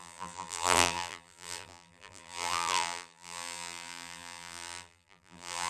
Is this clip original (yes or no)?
no